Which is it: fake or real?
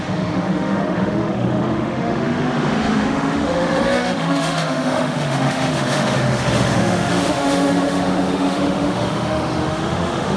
fake